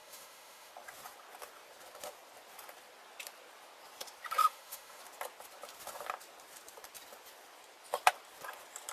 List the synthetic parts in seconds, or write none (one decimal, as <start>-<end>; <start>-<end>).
0.0-0.7; 4.4-5.0